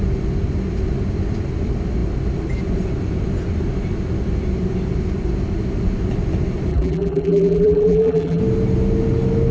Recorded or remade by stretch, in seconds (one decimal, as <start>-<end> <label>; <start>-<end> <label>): 0.0-6.7 recorded; 6.7-8.4 remade; 8.4-9.5 recorded